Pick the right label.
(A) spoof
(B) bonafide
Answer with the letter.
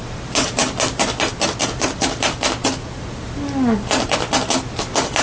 B